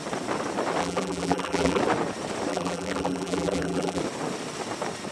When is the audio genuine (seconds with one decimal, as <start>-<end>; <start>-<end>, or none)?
0.0-0.8; 1.8-2.5; 4.0-5.1